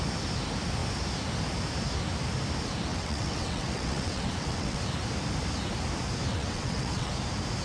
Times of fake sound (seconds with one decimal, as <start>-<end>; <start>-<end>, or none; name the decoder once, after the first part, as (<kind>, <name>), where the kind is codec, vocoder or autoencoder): 2.9-4.8 (vocoder, WaveNeXt); 6.3-7.1